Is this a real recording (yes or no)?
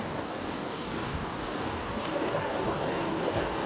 no